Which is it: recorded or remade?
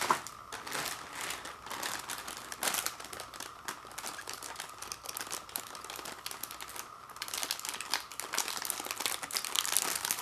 recorded